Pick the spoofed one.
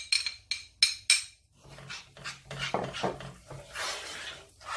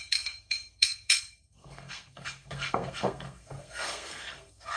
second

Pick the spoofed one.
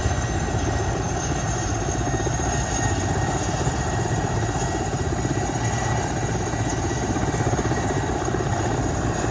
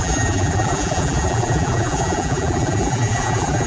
second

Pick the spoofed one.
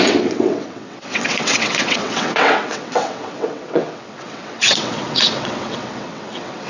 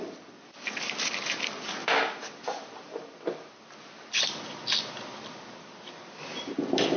first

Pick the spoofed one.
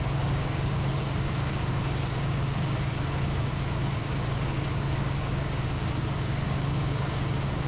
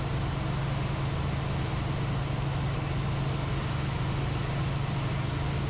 first